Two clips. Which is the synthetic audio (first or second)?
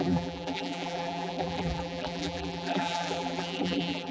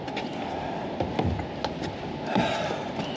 first